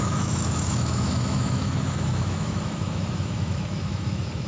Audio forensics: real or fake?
fake